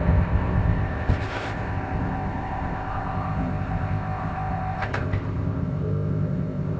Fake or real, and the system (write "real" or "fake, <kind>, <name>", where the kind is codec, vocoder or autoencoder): fake, codec, ZipCodec